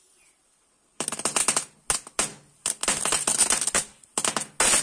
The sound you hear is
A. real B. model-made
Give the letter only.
A